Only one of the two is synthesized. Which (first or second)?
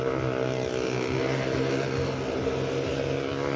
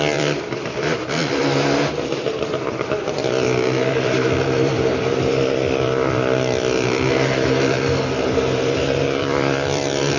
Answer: second